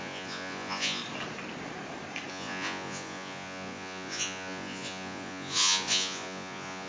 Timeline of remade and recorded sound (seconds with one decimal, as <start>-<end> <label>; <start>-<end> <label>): 0.0-1.0 remade; 1.0-2.3 recorded; 2.3-6.9 remade